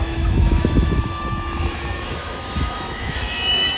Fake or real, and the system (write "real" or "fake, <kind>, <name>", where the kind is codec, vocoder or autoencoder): fake, autoencoder, DAC-VAE